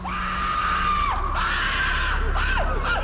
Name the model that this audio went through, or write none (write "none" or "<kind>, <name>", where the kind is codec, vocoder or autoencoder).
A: none